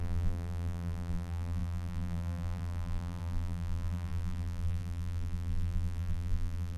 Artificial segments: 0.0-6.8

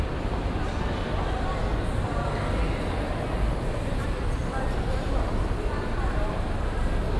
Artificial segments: 4.4-6.3